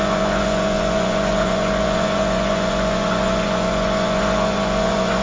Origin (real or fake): fake